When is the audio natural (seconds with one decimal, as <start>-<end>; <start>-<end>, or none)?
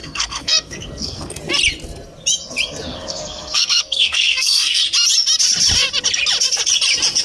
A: 1.4-2.9; 4.8-7.2